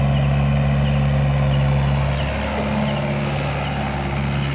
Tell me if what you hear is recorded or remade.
recorded